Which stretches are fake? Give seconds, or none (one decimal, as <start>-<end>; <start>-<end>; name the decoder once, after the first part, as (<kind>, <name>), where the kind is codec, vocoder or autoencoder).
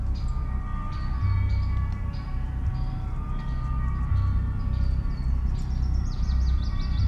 none